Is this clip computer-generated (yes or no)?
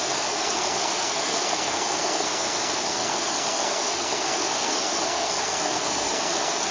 yes